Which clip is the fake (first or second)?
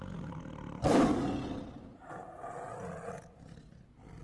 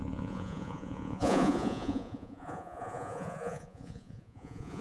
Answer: second